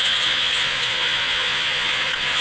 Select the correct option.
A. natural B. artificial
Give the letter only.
B